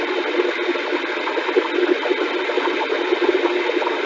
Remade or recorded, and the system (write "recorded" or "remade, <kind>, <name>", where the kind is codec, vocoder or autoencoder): recorded